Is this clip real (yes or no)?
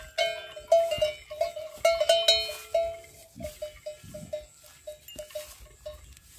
yes